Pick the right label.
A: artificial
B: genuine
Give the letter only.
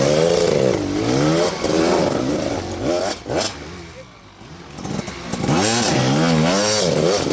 B